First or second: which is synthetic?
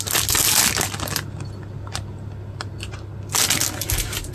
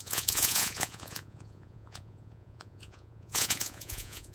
second